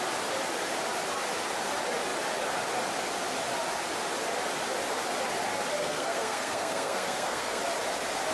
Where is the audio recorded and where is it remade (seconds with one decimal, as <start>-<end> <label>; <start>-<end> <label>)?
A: 0.0-5.8 recorded; 5.8-7.6 remade; 7.6-8.3 recorded